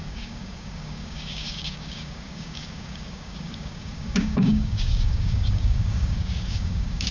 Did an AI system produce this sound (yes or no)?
yes